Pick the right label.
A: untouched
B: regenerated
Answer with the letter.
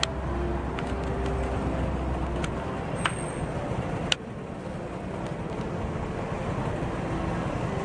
A